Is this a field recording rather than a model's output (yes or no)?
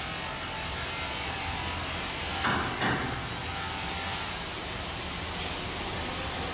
yes